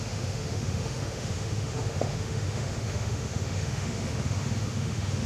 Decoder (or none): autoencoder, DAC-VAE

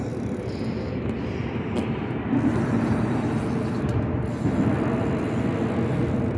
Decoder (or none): none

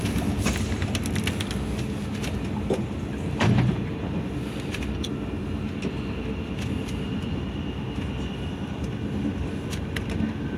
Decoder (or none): none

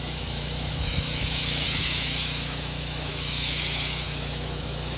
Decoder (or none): autoencoder, DAC-VAE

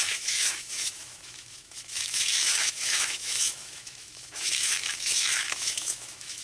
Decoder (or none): autoencoder, DAC-VAE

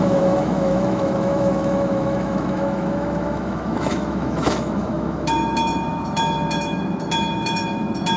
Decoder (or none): autoencoder, DAC-VAE